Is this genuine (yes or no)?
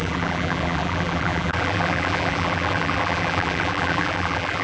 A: no